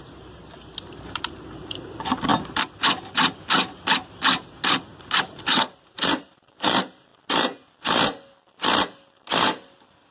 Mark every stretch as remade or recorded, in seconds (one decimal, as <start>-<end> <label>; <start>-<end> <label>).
0.0-2.3 remade; 2.3-5.2 recorded; 5.2-7.1 remade; 7.1-10.1 recorded